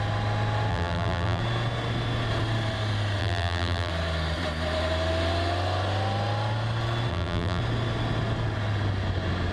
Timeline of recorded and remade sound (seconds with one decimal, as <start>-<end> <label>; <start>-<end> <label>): 0.0-0.7 recorded; 0.7-1.4 remade; 1.4-3.2 recorded; 3.2-3.9 remade; 3.9-7.1 recorded; 7.1-7.6 remade; 7.6-9.5 recorded